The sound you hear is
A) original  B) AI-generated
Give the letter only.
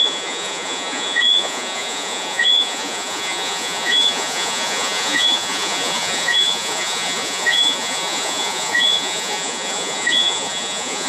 B